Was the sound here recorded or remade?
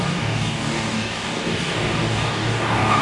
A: remade